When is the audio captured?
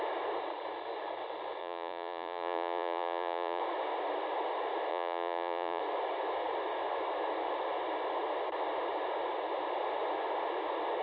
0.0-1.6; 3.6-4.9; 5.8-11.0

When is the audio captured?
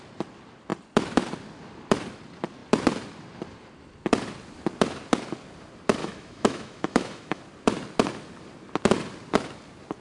0.0-6.0; 7.4-10.0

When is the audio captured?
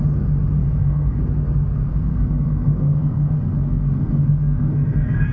0.0-0.6; 1.2-1.9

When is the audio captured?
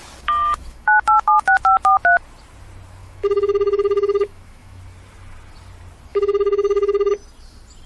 0.0-0.4; 1.5-3.0; 4.8-6.1; 7.1-7.9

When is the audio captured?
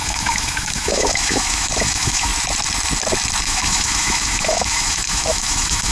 2.3-3.4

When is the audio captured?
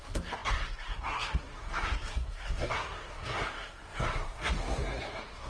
none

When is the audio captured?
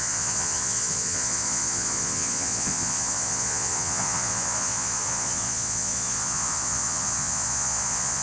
none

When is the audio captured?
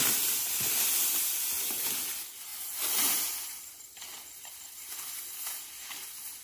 0.0-6.4